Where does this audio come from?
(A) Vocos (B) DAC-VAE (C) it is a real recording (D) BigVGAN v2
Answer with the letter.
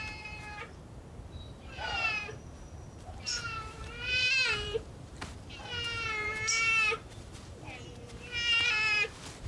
D